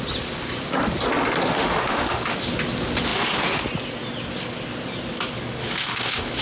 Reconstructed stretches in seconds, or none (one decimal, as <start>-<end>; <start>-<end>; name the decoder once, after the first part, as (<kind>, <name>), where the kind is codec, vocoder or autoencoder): 1.5-2.5 (autoencoder, DAC-VAE); 5.6-6.4